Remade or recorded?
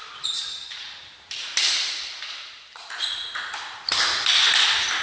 recorded